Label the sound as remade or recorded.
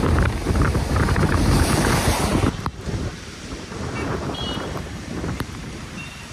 remade